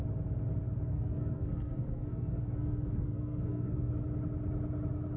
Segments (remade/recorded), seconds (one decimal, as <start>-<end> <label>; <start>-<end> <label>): 0.0-0.9 recorded; 0.9-3.9 remade; 3.9-5.2 recorded